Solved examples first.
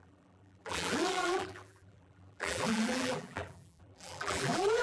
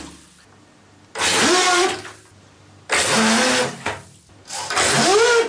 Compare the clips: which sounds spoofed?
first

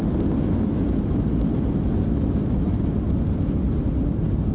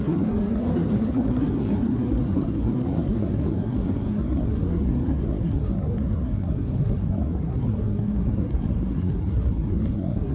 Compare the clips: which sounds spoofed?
second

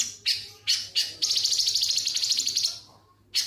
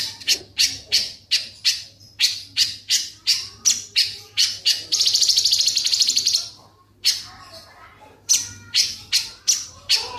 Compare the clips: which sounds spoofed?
second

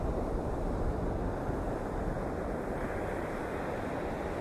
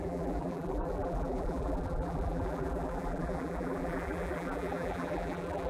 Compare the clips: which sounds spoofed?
second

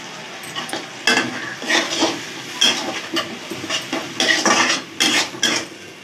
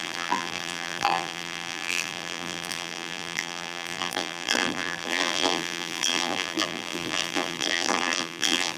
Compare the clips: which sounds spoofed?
second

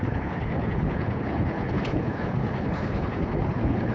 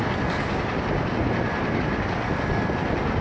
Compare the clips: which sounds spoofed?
first